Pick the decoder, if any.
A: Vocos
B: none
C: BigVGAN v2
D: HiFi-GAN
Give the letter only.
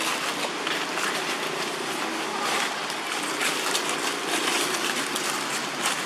B